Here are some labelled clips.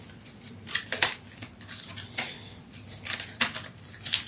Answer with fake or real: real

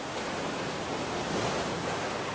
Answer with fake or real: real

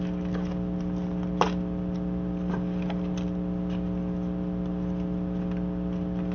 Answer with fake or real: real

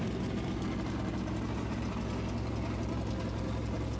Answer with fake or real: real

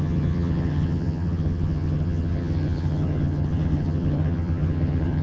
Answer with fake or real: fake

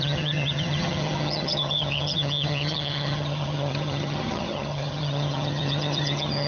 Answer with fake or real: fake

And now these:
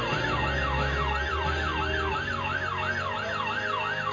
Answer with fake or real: real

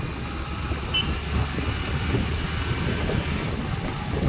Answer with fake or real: real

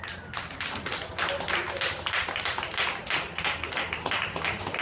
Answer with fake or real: real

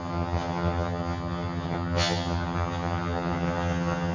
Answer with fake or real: fake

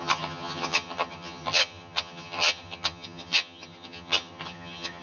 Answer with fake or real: fake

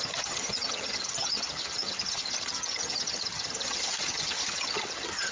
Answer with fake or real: fake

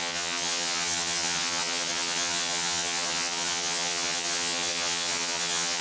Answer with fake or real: fake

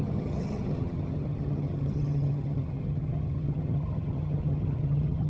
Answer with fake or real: fake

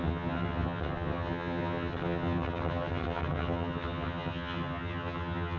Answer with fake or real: fake